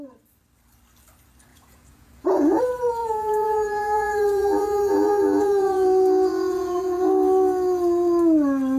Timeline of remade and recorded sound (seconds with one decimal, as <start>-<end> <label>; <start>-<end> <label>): 0.0-1.5 recorded; 1.5-2.6 remade; 2.6-3.0 recorded; 3.0-7.1 remade; 7.1-8.8 recorded